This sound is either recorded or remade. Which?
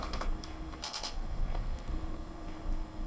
remade